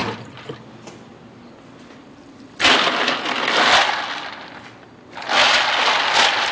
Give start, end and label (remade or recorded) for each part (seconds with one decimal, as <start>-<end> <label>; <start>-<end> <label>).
0.0-6.5 recorded

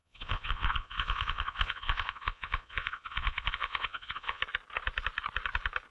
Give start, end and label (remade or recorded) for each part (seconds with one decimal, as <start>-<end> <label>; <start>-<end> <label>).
0.0-4.4 remade; 4.4-5.9 recorded

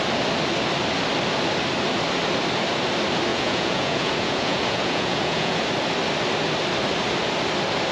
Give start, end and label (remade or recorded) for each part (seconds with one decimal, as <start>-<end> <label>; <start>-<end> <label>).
0.0-3.3 recorded; 3.3-5.6 remade; 5.6-7.9 recorded